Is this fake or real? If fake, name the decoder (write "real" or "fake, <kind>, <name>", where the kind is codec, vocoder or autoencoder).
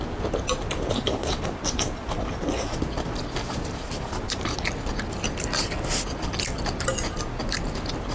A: real